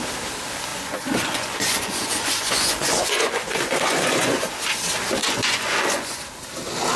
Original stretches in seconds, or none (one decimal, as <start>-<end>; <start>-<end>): 0.0-0.7; 4.5-5.2; 6.2-7.0